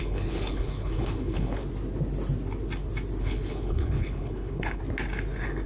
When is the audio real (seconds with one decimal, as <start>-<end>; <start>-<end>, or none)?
1.6-3.2; 4.8-5.7